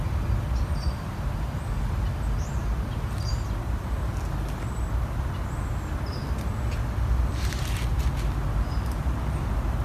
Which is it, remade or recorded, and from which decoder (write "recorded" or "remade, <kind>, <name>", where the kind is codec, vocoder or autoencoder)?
recorded